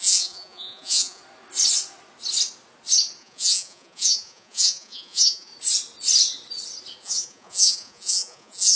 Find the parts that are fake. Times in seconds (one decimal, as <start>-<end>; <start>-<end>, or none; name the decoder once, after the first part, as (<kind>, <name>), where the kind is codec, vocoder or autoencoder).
0.0-1.2 (vocoder, Vocos); 3.2-5.5; 7.0-8.8

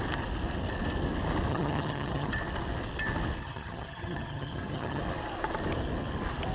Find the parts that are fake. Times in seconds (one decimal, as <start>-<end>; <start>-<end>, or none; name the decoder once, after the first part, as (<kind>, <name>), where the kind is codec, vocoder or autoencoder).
1.5-2.3 (vocoder, HiFi-GAN); 3.4-5.0

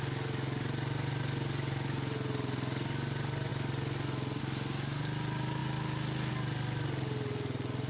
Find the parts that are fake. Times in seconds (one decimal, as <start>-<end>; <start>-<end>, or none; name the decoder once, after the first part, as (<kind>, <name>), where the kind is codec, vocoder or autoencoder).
none

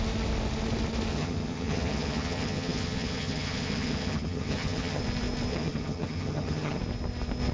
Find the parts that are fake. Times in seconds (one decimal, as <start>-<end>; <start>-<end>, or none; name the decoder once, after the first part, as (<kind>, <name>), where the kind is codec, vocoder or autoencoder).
1.1-5.0 (vocoder, HiFi-GAN); 5.5-6.8

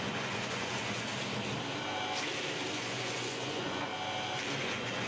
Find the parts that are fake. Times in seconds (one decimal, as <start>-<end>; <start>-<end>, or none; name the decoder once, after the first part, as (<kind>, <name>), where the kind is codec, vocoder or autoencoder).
0.0-1.1 (vocoder, Vocos); 2.7-3.9; 4.6-5.1